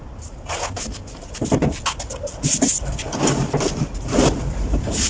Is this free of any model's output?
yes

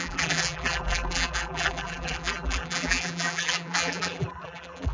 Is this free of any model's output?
no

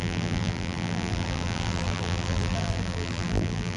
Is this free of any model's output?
no